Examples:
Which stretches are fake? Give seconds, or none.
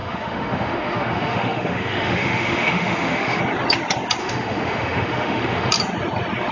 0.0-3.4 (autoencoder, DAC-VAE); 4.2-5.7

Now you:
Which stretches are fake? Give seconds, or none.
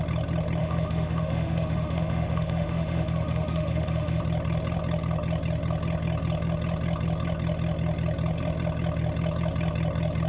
0.6-4.2 (autoencoder, DAC-VAE)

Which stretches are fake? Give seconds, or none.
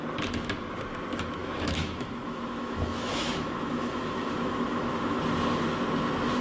1.4-5.2 (autoencoder, DAC-VAE)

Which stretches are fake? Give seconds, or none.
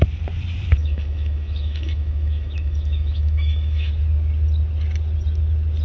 0.8-3.9 (autoencoder, DAC-VAE)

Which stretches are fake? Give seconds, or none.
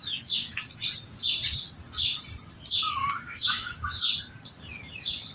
0.0-0.6 (autoencoder, DAC-VAE); 3.0-4.0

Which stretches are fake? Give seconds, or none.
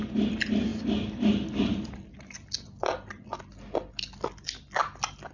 none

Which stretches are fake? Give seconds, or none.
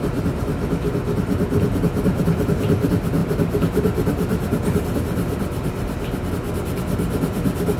none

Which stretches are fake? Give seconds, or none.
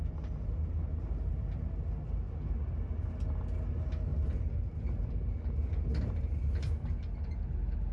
none